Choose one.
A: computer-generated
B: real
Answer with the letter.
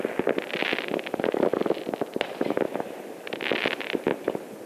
B